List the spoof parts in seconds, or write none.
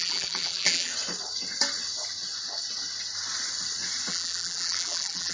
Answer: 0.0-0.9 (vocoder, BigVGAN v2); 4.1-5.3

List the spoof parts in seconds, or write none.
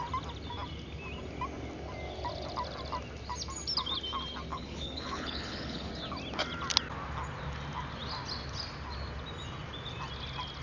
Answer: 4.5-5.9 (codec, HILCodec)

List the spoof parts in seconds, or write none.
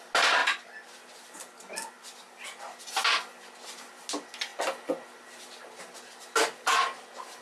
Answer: none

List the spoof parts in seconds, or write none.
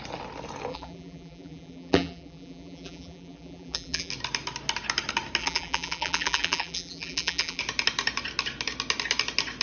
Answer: 0.7-4.1 (vocoder, BigVGAN v2); 5.4-7.6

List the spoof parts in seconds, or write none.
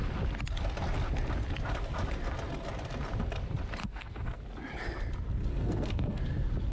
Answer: 3.8-4.4 (codec, SNAC); 5.5-6.2